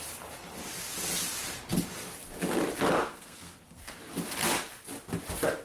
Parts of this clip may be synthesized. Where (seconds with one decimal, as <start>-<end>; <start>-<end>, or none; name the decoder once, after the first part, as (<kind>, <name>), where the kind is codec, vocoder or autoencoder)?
3.0-4.0 (codec, SNAC)